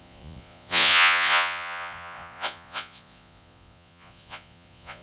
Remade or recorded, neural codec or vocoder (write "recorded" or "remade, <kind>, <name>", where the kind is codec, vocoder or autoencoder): remade, vocoder, Vocos